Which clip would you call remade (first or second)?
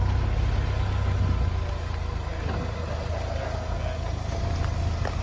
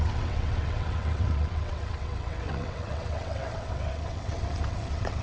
second